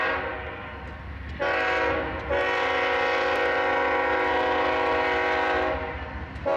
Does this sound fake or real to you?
real